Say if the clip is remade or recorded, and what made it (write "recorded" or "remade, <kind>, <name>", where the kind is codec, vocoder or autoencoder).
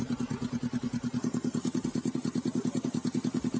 recorded